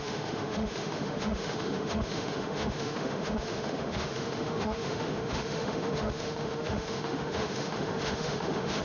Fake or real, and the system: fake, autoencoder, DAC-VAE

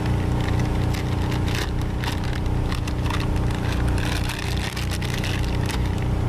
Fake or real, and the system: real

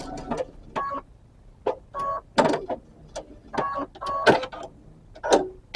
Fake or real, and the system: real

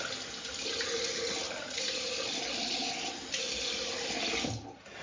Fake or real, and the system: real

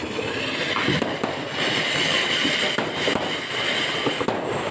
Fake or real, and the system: real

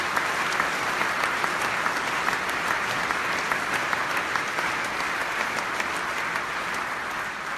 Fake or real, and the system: real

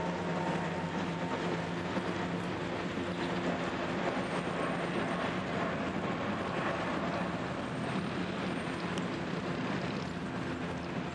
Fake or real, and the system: real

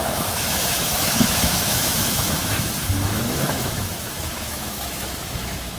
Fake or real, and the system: fake, autoencoder, DAC-VAE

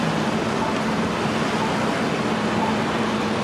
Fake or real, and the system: real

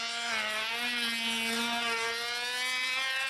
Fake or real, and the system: real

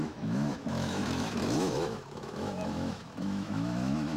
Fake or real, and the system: fake, autoencoder, DAC-VAE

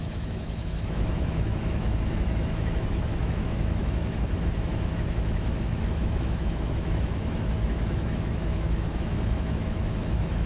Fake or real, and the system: fake, autoencoder, DAC-VAE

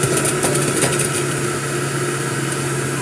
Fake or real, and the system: real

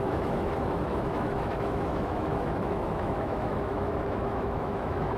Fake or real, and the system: fake, autoencoder, DAC-VAE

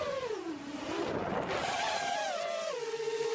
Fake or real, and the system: real